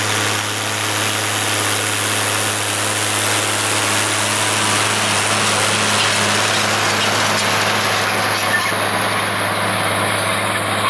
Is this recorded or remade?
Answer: recorded